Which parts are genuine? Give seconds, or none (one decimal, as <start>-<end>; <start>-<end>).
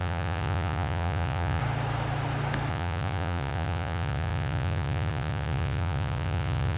1.6-2.7